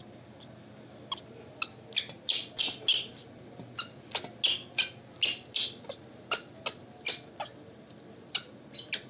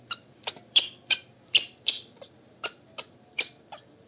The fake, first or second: second